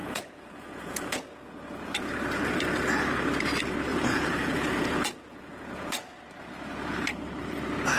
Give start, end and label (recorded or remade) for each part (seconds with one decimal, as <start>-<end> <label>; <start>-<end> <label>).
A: 0.0-1.4 remade; 1.4-3.9 recorded; 3.9-6.1 remade; 6.1-8.0 recorded